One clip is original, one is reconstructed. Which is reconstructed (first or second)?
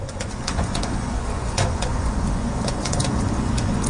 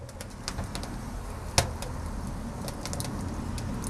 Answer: first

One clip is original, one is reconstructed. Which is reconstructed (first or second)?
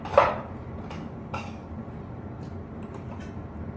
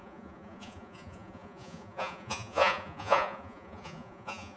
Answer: second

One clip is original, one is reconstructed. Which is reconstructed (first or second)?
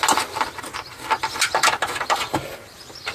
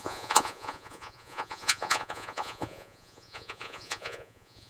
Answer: second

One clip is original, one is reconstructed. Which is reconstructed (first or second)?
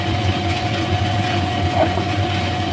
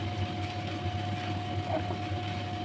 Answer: first